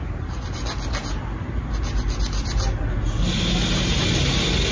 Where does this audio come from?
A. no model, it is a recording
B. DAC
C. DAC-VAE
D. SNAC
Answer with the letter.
A